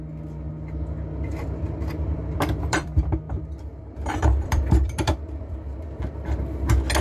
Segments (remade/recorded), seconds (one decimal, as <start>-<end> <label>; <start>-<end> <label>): 0.0-1.3 recorded; 1.3-5.5 remade; 5.5-7.0 recorded